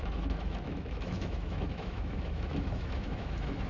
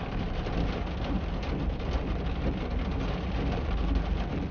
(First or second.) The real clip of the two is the second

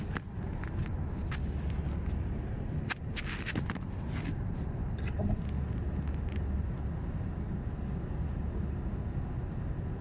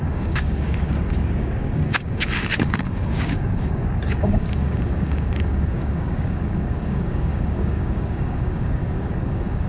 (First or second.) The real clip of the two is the first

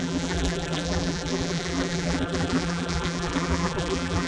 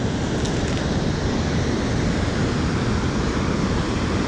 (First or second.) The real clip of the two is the second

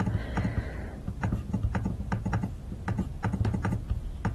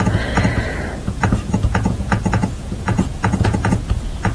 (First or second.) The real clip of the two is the first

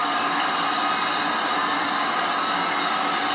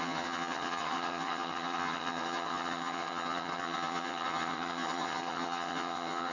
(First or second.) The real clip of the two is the first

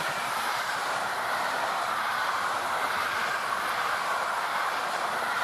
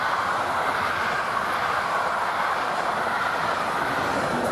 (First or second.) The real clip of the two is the second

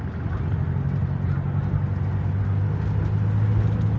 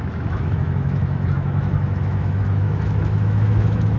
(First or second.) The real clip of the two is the first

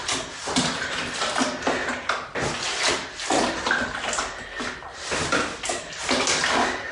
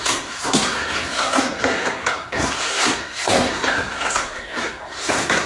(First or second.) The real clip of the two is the first